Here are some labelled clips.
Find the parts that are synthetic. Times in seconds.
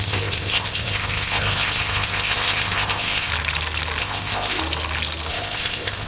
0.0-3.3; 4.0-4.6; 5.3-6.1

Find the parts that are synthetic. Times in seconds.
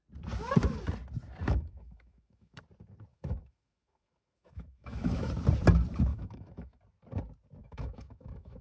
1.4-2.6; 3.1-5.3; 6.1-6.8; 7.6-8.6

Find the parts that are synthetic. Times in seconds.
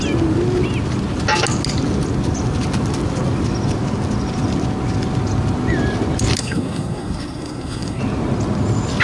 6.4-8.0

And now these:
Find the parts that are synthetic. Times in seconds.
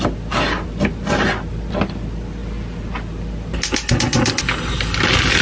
none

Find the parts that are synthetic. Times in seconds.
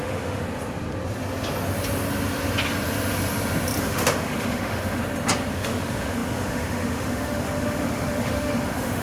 0.0-0.4; 3.8-5.0; 5.5-9.0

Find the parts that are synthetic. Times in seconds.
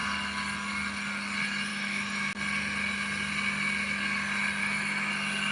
1.7-2.3; 4.6-5.1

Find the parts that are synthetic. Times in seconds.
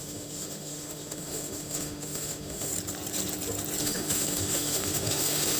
0.0-2.7; 3.8-5.6